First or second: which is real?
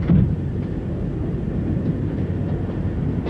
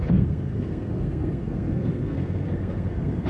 first